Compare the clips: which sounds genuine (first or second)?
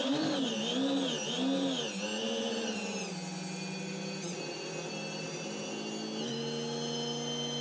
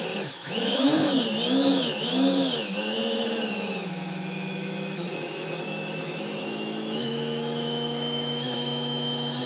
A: first